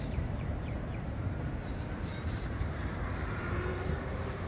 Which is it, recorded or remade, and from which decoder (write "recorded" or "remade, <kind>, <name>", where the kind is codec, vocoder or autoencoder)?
remade, vocoder, BigVGAN v2